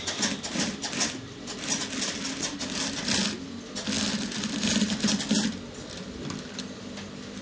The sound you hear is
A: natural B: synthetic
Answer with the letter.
A